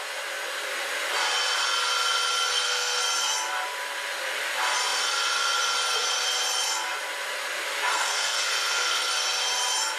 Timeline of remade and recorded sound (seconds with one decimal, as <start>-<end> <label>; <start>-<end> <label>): 0.0-2.5 recorded; 2.5-3.0 remade; 3.0-7.9 recorded; 7.9-9.1 remade; 9.1-10.0 recorded

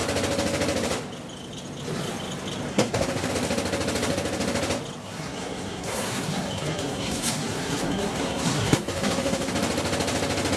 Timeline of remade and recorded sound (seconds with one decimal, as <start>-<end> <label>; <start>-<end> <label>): 0.0-2.7 recorded; 2.7-3.3 remade; 3.3-5.0 recorded; 5.0-9.5 remade; 9.5-10.6 recorded

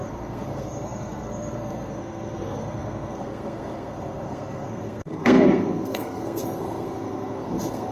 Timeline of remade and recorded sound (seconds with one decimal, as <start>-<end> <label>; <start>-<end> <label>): 0.0-7.9 remade

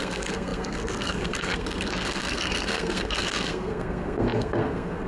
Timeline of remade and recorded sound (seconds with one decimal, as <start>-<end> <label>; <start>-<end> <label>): 0.0-5.1 remade

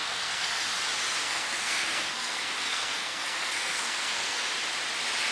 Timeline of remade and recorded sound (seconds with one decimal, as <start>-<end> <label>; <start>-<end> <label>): 0.0-0.6 remade; 0.6-1.2 recorded; 1.2-4.4 remade; 4.4-5.3 recorded

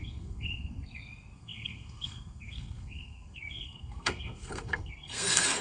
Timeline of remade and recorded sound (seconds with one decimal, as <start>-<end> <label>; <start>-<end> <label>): 0.0-5.6 remade